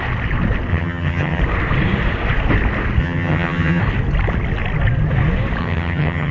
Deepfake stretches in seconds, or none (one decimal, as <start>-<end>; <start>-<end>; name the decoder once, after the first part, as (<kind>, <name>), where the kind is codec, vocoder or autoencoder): 0.7-1.4 (vocoder, HiFi-GAN); 3.0-3.8; 5.6-6.3